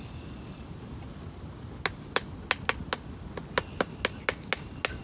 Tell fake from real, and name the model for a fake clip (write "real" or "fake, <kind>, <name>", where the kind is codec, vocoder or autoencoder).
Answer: real